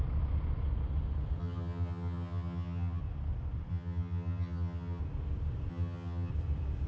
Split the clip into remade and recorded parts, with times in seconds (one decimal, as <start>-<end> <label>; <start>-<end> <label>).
0.0-1.4 recorded; 1.4-3.0 remade; 3.0-3.7 recorded; 3.7-5.0 remade; 5.0-5.7 recorded; 5.7-6.3 remade; 6.3-6.9 recorded

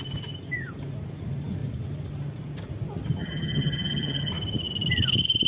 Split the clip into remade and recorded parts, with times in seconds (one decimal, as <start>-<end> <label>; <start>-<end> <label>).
0.0-3.2 recorded; 3.2-4.3 remade; 4.3-5.5 recorded

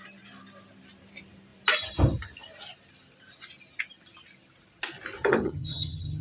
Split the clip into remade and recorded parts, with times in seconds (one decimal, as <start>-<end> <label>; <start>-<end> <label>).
0.0-5.4 recorded; 5.4-6.2 remade

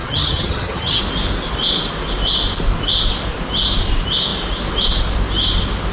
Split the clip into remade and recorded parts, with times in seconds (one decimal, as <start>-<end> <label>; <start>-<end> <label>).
0.0-1.0 remade; 1.0-5.9 recorded

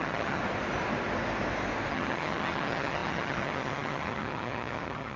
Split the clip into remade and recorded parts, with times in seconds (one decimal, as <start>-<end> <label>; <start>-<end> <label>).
0.0-0.4 remade; 0.4-1.9 recorded; 1.9-5.2 remade

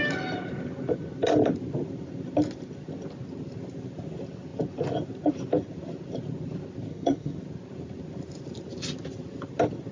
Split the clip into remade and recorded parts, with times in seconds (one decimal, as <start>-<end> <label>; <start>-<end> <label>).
0.0-6.9 recorded; 6.9-7.4 remade; 7.4-9.9 recorded